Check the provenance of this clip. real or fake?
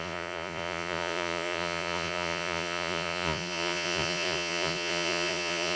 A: fake